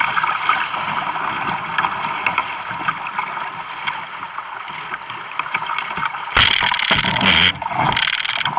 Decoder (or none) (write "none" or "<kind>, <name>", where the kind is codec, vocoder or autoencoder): none